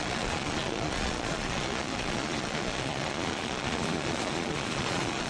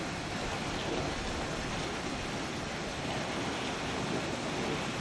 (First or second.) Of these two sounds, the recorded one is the second